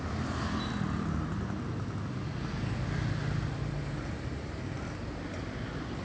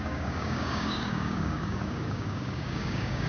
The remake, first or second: second